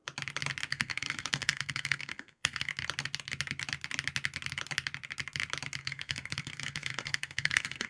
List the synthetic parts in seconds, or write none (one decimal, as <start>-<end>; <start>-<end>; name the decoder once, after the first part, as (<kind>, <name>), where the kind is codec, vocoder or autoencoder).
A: 0.7-2.7 (codec, SNAC); 5.8-7.9